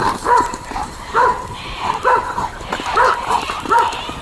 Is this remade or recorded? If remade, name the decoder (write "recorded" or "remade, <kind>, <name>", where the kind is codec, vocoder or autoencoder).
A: remade, vocoder, BigVGAN v2